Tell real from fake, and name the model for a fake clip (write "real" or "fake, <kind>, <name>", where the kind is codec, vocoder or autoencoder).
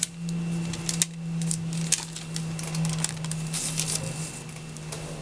real